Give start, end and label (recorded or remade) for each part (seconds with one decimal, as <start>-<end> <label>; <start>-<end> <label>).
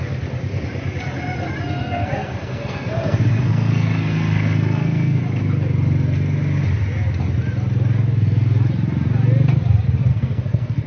0.0-1.8 recorded; 1.8-5.2 remade; 5.2-10.1 recorded; 10.1-10.9 remade